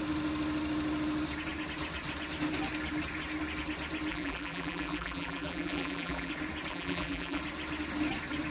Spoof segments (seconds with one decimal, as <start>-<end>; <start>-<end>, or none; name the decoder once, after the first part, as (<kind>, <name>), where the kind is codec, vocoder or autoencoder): 4.1-6.3 (vocoder, BigVGAN v2); 6.7-7.4